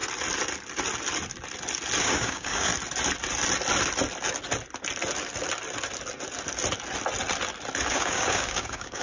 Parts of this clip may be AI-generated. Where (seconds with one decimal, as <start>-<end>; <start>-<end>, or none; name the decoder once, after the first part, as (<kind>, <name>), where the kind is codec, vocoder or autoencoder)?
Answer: 2.0-2.7 (codec, DAC); 7.9-9.0